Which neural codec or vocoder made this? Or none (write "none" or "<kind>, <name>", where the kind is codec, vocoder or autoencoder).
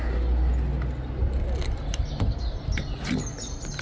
none